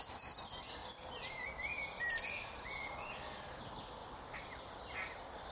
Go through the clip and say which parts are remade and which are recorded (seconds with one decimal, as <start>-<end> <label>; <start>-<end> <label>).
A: 0.0-0.8 recorded; 0.8-3.1 remade; 3.1-5.5 recorded